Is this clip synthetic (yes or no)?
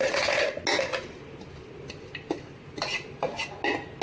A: no